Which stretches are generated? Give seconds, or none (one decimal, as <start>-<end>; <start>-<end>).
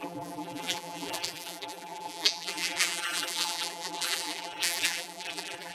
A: 0.0-5.7